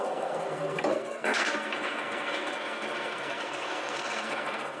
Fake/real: fake